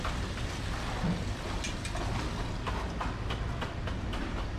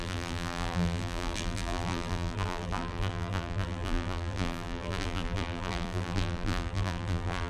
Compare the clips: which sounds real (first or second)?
first